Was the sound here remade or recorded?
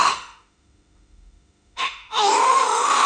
remade